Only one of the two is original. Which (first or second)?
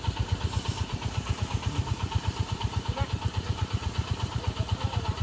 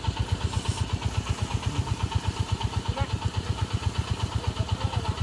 second